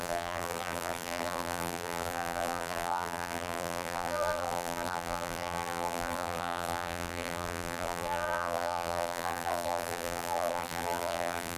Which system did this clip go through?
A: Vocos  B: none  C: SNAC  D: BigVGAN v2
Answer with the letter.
D